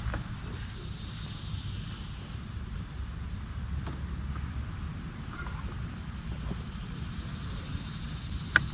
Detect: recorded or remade recorded